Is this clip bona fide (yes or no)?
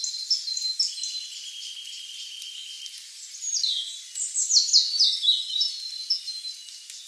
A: yes